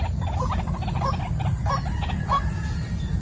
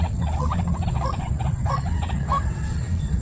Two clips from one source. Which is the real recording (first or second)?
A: first